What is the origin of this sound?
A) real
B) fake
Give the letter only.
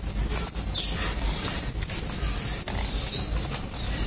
A